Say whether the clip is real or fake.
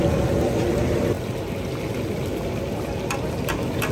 real